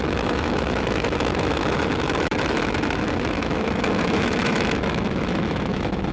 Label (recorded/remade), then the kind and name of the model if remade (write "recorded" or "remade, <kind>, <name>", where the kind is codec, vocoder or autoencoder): remade, autoencoder, DAC-VAE